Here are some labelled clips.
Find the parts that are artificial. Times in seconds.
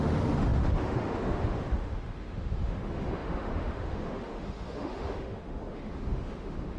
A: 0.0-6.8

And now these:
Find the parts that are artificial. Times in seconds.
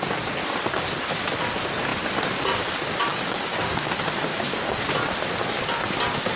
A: 3.1-3.9; 4.3-4.9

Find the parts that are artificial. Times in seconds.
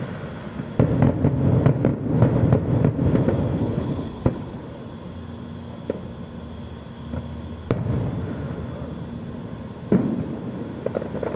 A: 3.6-4.6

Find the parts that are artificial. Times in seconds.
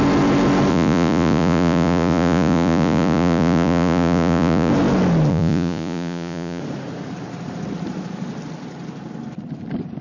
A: 0.7-4.7; 5.3-6.6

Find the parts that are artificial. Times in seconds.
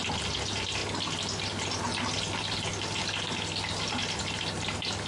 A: none